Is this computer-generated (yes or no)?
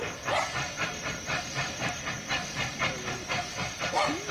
no